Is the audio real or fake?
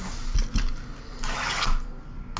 real